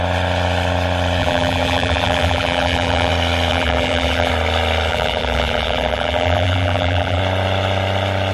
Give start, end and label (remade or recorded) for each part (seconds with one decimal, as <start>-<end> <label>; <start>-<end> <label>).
0.0-1.2 recorded; 1.2-3.1 remade; 3.1-3.5 recorded; 3.5-4.3 remade; 4.3-4.9 recorded; 4.9-7.2 remade; 7.2-8.3 recorded